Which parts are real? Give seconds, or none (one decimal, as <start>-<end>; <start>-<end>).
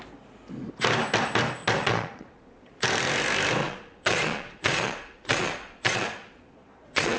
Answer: 0.0-1.8; 2.7-3.6